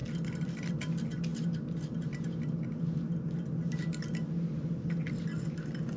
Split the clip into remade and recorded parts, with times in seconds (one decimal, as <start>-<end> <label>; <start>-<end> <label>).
0.0-6.0 recorded